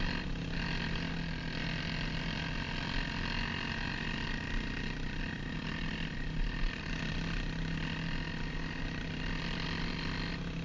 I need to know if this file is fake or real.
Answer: real